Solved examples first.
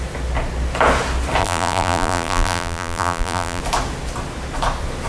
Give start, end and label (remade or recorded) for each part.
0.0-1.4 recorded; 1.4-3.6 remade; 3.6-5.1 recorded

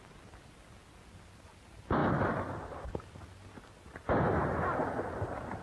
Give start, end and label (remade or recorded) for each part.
0.0-5.6 recorded

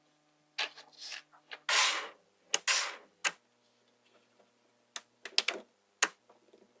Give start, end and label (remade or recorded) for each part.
0.0-6.8 recorded

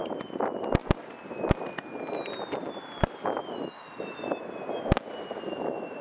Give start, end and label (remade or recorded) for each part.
0.0-6.0 recorded

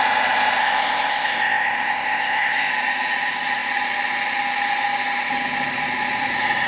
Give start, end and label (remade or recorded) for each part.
0.0-0.6 recorded; 0.6-2.7 remade; 2.7-6.7 recorded

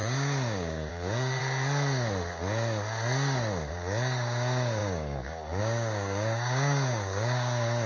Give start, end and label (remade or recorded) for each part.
0.0-1.4 remade; 1.4-3.7 recorded; 3.7-7.9 remade

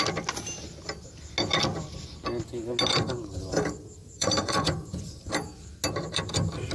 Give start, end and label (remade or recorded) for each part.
0.0-4.0 recorded; 4.0-5.3 remade; 5.3-6.7 recorded